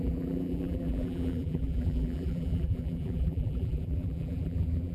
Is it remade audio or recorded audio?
remade